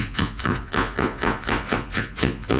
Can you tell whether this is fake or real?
fake